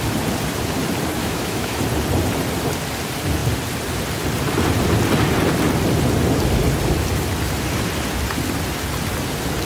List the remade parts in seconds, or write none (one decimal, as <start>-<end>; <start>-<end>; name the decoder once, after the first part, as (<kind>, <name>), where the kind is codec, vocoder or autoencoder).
1.2-1.8 (autoencoder, DAC-VAE)